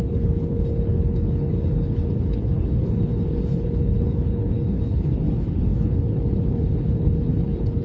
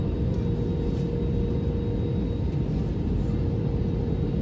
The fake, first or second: first